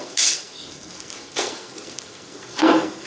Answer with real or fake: fake